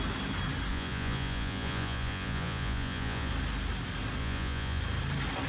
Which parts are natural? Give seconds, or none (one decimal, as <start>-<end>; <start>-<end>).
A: 0.0-0.7; 3.3-4.2; 4.8-5.5